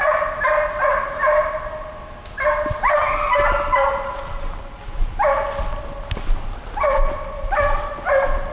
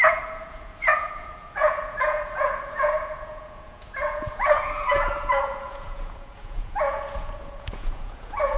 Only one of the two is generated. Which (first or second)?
second